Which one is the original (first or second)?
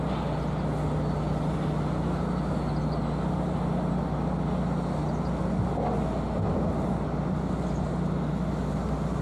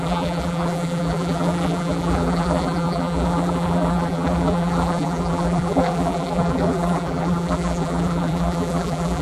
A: first